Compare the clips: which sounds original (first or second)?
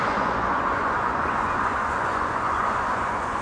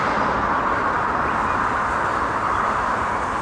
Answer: second